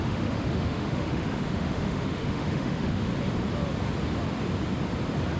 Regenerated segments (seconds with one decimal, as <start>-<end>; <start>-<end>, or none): 0.0-3.1